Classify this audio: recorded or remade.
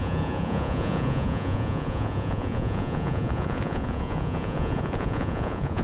remade